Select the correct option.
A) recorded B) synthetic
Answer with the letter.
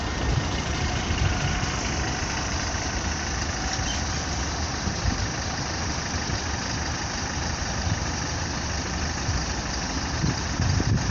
B